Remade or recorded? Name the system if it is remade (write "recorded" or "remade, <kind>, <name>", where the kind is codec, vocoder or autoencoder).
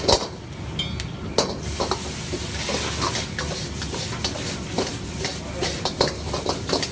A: recorded